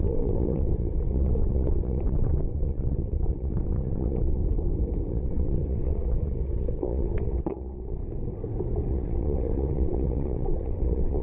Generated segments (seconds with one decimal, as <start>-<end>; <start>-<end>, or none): 0.0-4.4; 5.1-8.0; 8.9-11.2